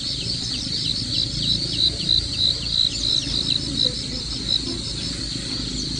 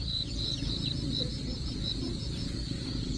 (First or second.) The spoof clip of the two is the second